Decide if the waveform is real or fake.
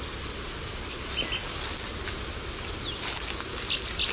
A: real